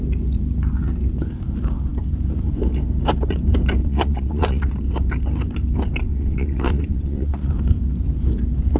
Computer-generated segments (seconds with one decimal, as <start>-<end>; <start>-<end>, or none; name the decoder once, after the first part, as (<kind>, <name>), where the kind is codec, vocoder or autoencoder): 3.8-4.7 (vocoder, WaveNeXt); 6.1-7.5